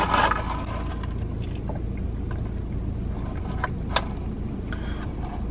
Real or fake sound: real